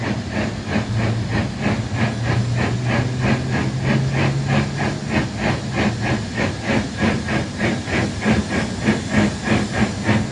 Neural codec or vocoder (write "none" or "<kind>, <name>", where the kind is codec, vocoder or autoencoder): none